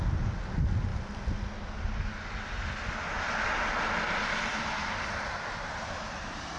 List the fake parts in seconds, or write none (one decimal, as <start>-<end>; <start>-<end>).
none